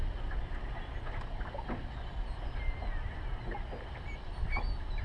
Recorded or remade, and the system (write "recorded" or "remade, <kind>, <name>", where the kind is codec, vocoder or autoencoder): recorded